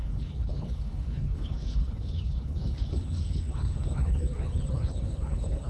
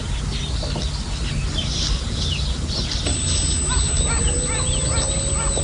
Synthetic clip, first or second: first